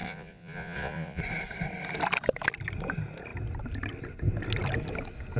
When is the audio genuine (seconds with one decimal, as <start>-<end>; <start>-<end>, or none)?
1.2-5.4